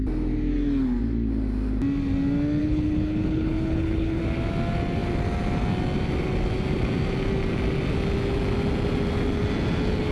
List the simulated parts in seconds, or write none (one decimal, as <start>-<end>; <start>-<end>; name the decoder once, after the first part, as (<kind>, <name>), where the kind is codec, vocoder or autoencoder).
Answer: 2.6-4.2 (codec, HILCodec)